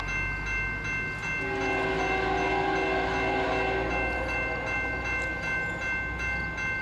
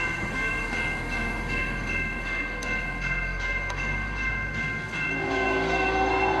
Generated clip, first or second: second